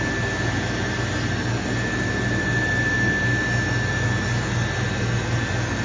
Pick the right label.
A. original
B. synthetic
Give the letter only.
A